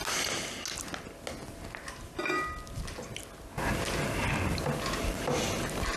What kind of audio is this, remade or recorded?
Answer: recorded